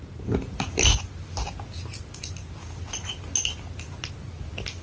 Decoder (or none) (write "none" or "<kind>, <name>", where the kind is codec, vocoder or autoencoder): none